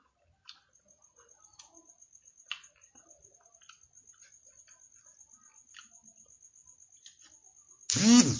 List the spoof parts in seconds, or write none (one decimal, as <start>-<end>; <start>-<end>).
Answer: none